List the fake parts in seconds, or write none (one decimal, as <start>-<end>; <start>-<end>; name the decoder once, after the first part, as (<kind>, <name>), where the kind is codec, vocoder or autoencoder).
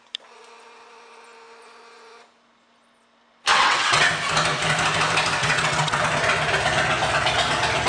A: 3.5-4.1 (vocoder, WaveNeXt); 5.4-6.0